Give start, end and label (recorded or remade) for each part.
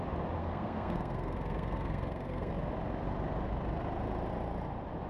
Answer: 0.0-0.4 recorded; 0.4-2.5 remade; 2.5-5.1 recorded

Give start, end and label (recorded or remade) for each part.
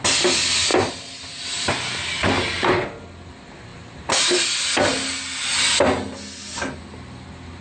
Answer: 0.0-7.6 recorded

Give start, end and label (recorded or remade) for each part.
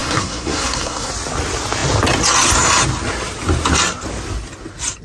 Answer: 0.0-1.1 remade; 1.1-5.0 recorded